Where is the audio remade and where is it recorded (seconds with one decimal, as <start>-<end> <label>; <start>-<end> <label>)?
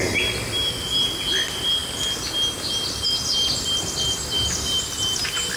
0.0-5.6 recorded